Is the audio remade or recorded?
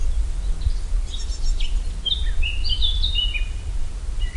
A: recorded